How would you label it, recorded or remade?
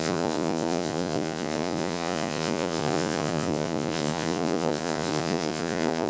remade